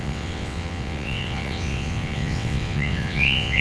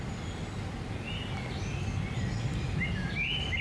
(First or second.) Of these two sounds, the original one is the second